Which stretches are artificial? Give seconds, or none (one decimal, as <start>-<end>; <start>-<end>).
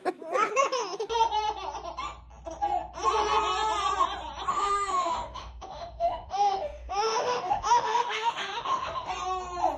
4.5-9.1